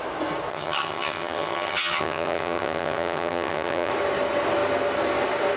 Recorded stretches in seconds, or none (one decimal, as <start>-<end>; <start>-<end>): 0.0-0.5; 3.9-5.6